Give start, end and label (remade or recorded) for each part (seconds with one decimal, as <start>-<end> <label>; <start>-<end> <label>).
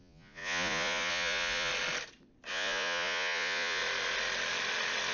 0.0-1.7 remade; 1.7-2.5 recorded; 2.5-3.8 remade; 3.8-5.1 recorded